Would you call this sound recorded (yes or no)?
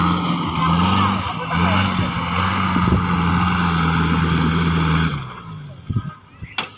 yes